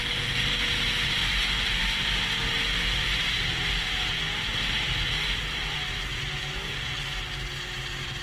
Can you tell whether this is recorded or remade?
recorded